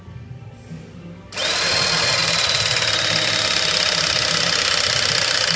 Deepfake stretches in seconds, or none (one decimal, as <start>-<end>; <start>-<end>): none